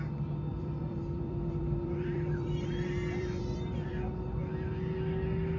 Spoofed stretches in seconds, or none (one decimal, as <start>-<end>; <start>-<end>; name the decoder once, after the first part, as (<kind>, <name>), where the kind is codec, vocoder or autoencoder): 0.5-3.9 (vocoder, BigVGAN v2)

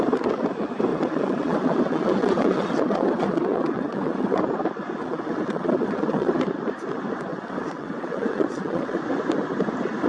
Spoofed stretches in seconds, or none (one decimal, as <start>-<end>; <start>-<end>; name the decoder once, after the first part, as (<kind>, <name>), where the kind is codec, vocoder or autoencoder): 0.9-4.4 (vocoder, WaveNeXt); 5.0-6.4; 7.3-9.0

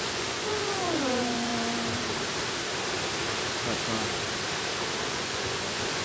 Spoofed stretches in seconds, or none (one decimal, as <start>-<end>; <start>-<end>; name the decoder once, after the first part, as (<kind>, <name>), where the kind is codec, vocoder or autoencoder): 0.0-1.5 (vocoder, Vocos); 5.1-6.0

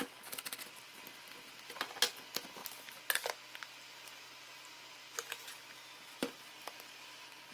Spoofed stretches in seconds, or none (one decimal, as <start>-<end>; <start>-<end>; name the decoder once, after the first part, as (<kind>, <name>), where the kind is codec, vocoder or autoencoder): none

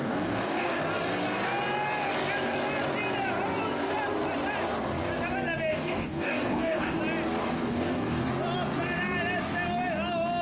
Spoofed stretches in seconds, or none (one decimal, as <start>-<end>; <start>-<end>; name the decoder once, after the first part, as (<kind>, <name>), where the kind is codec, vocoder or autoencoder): 0.0-0.8 (codec, DAC); 5.7-7.0; 7.4-8.3

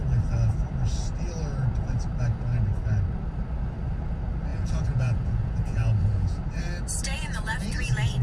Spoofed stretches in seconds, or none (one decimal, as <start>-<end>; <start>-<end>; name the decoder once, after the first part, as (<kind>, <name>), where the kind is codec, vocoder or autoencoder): 4.5-6.4 (vocoder, Vocos); 7.1-7.7